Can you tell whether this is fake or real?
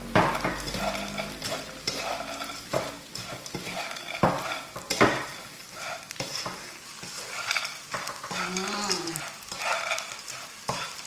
real